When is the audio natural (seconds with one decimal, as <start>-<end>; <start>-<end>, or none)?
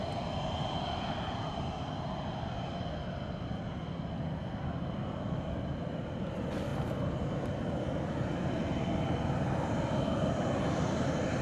0.0-11.4